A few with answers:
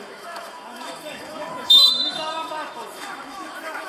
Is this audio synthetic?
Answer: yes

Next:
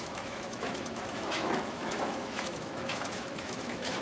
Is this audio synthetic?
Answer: yes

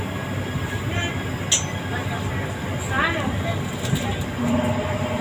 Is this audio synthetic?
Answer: no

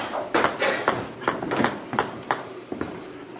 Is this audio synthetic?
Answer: no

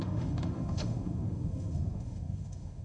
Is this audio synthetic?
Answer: yes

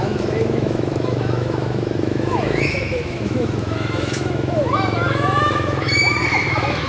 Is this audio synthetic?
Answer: yes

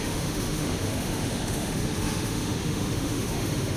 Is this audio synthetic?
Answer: yes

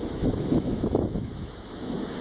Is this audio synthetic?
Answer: yes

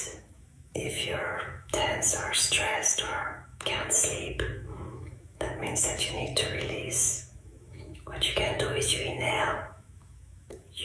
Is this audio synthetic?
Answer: yes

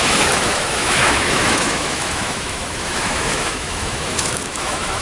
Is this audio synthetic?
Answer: yes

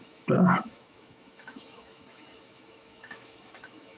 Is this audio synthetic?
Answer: yes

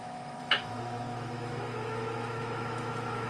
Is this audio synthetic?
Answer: yes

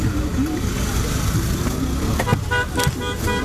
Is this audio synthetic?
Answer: no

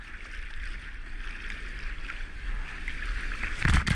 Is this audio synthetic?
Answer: no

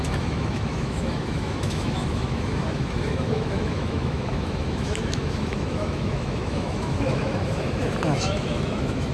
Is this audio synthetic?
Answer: yes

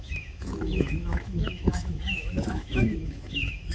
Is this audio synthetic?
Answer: yes